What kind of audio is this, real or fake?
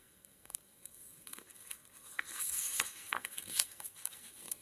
fake